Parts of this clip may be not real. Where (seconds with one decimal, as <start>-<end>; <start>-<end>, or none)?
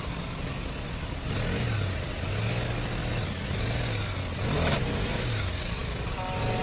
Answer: none